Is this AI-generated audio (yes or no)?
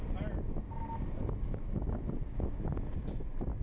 no